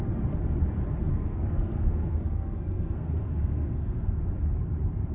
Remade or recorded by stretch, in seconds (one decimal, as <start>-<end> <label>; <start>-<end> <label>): 0.0-1.1 recorded; 1.1-4.2 remade; 4.2-5.1 recorded